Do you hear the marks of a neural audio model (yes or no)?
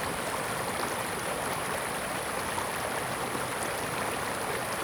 no